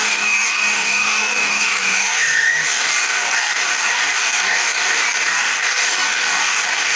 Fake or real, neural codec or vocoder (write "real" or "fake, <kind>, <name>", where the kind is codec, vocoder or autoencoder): fake, codec, DAC